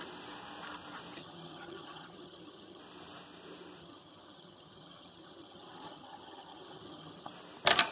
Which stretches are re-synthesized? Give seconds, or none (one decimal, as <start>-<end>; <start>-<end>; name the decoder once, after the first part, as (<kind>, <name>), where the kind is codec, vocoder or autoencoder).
1.2-2.8 (vocoder, HiFi-GAN); 3.8-7.3